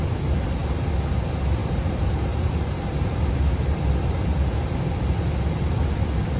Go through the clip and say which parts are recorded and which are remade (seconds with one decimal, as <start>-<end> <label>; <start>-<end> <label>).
0.0-1.6 recorded; 1.6-3.3 remade; 3.3-6.4 recorded

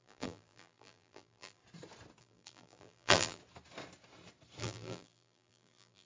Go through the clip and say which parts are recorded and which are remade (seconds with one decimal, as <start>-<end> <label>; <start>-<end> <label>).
0.0-1.6 remade; 1.6-2.2 recorded; 2.2-3.4 remade; 3.4-4.6 recorded; 4.6-6.1 remade